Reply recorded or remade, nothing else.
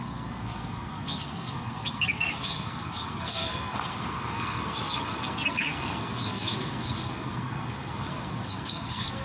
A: remade